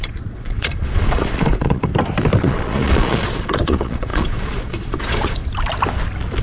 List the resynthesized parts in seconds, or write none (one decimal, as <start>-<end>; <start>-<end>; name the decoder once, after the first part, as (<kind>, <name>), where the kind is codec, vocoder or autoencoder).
0.0-1.9 (vocoder, Vocos); 2.4-5.4